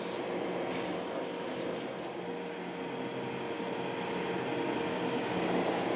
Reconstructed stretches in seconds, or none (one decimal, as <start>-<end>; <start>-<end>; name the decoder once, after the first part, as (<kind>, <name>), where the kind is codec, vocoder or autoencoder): 4.9-6.0 (codec, DAC)

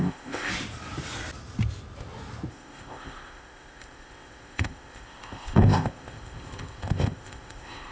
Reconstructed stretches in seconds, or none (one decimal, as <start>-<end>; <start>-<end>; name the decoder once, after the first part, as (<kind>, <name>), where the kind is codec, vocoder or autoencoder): 0.0-0.5 (codec, ZipCodec); 2.5-7.9

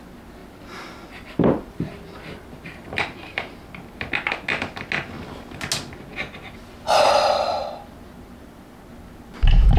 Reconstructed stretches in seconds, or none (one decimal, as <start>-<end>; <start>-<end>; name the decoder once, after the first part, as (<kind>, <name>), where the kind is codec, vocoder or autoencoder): 0.4-4.1 (vocoder, BigVGAN v2); 6.1-8.9

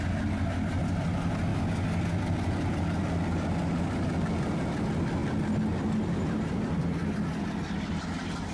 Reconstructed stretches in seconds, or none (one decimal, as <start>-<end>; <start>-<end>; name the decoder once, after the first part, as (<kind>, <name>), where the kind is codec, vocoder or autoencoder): none

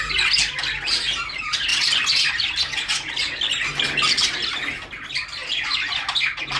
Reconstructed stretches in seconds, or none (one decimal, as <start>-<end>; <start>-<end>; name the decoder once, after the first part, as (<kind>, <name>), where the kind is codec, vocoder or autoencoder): none

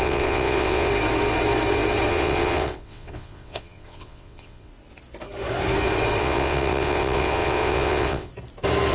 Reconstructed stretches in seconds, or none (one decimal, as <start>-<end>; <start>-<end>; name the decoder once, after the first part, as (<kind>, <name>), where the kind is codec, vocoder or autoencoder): 0.0-0.9 (vocoder, WaveNeXt); 2.1-4.7; 6.2-8.3

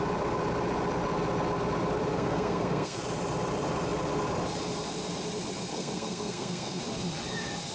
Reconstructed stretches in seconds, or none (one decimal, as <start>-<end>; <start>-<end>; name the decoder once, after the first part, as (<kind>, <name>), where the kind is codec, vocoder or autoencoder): 2.1-3.0 (codec, SNAC); 5.7-6.8

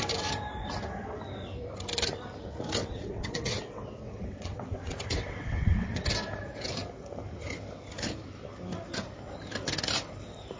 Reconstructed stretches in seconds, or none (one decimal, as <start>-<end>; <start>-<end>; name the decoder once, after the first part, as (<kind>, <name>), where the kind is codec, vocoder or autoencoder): 2.8-6.0 (vocoder, WaveNeXt)